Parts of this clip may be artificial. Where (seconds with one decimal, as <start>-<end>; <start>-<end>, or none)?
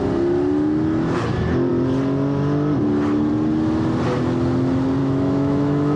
5.0-6.0